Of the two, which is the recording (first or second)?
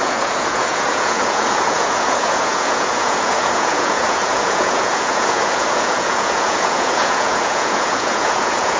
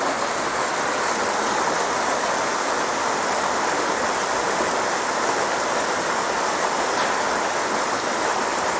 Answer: second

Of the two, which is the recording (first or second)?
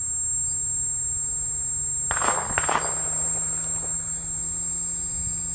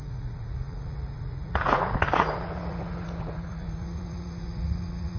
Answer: first